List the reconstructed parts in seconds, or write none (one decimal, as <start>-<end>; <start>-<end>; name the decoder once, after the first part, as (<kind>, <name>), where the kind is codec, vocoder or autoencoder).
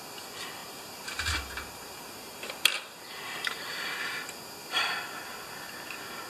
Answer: 0.6-3.9 (vocoder, BigVGAN v2)